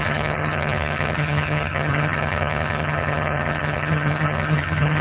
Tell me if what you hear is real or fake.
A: fake